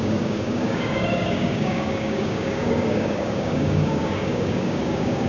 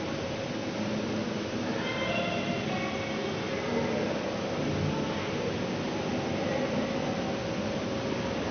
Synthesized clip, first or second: first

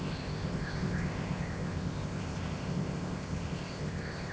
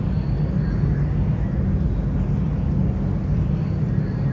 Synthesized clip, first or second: first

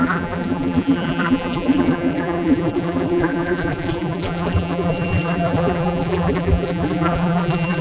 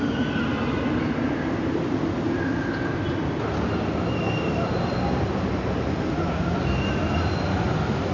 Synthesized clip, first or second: first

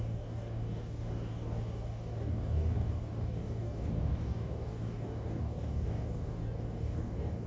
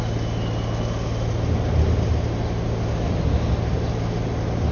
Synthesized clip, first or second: first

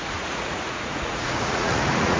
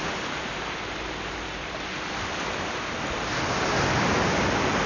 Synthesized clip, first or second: first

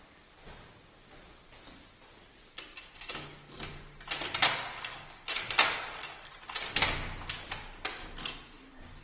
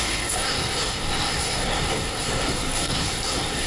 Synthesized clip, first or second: second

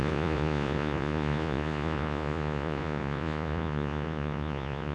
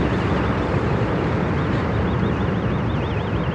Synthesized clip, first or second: first